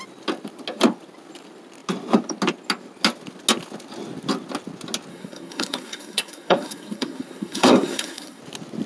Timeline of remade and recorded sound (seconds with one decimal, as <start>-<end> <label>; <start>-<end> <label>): 0.0-5.1 recorded; 5.1-8.4 remade; 8.4-8.9 recorded